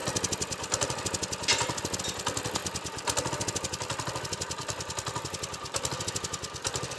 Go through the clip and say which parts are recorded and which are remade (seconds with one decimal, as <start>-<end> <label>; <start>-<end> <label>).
0.0-2.6 recorded; 2.6-7.0 remade